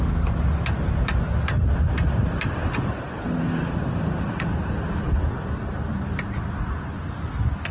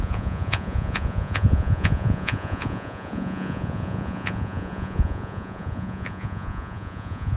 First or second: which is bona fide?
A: first